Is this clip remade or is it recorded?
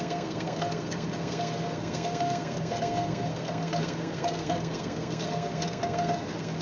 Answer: remade